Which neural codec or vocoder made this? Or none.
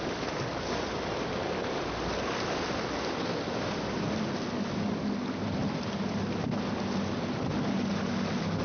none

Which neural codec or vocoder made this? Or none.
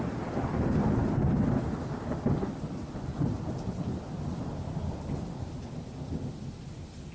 none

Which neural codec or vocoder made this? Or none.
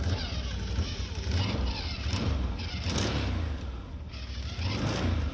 none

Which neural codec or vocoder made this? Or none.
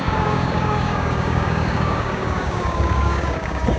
codec, DAC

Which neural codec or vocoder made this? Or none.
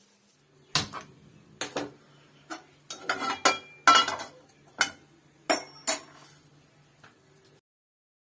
none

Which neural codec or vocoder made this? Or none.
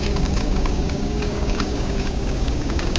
codec, DAC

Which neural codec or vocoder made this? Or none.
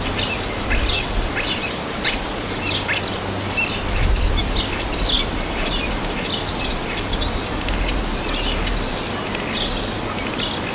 none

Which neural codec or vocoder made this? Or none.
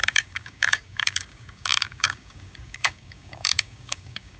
codec, DAC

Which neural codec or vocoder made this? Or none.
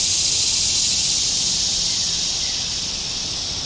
none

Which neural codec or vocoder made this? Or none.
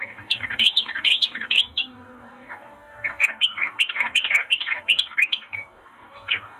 codec, DAC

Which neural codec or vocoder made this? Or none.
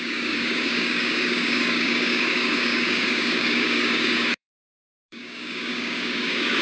codec, DAC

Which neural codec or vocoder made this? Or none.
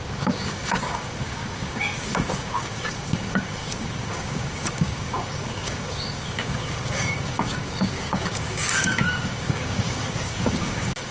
codec, DAC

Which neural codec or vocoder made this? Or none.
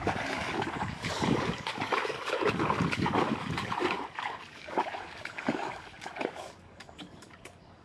codec, DAC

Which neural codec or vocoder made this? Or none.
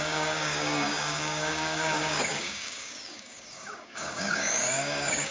codec, DAC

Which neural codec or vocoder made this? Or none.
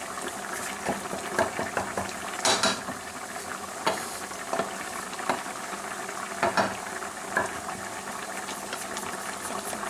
none